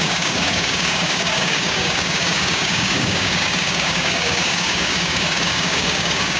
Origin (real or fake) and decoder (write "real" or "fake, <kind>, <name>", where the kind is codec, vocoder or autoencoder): fake, codec, DAC